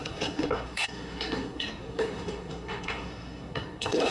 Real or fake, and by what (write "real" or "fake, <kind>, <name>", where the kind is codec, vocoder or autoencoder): fake, codec, SNAC